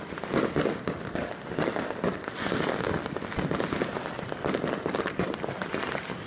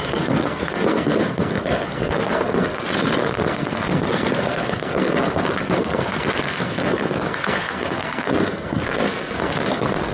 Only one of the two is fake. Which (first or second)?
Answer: second